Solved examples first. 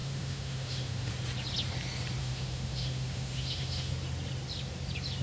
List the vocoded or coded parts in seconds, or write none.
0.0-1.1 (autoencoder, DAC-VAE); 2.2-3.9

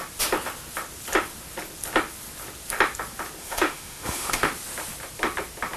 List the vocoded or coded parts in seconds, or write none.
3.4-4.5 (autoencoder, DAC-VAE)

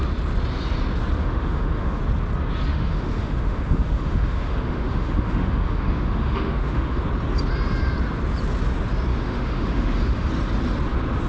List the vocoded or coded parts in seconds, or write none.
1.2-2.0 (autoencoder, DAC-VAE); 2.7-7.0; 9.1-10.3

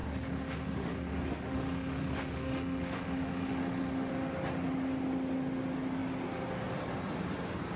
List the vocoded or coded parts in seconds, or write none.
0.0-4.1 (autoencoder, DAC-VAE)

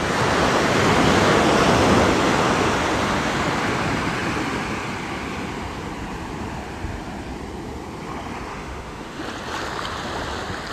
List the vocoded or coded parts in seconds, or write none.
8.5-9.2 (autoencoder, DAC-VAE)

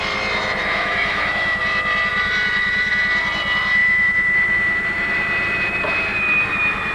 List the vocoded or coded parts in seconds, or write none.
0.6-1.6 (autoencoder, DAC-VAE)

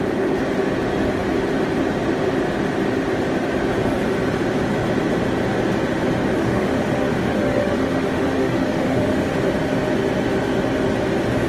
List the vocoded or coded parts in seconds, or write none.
6.4-9.4 (autoencoder, DAC-VAE)